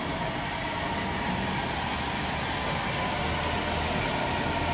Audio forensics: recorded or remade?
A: recorded